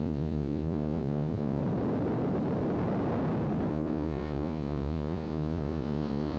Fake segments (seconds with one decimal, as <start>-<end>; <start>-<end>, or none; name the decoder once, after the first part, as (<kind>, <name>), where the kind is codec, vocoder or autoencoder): 0.0-1.6 (vocoder, Vocos); 3.7-6.4